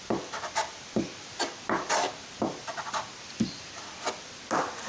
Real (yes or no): yes